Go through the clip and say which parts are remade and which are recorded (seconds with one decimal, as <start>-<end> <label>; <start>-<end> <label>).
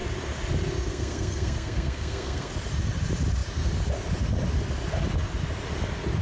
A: 0.0-0.9 recorded; 0.9-2.5 remade; 2.5-6.2 recorded